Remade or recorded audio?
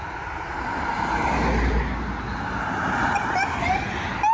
recorded